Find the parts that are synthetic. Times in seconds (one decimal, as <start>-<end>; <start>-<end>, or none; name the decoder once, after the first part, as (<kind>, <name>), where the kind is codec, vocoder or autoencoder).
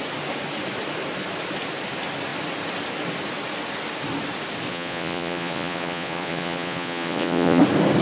4.7-7.6 (vocoder, Vocos)